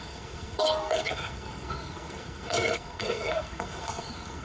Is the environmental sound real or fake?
fake